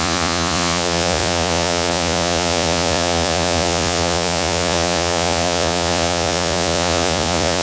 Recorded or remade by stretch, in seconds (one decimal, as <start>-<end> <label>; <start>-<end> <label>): 0.0-7.6 remade